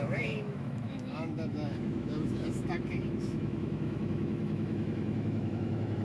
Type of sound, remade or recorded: remade